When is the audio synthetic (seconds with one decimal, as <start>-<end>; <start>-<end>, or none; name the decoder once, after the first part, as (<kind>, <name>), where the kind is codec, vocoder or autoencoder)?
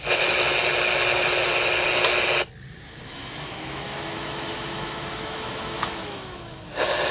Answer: 3.1-6.6 (autoencoder, DAC-VAE)